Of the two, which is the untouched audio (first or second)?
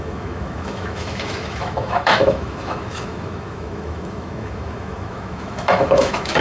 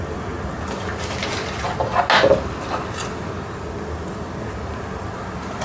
second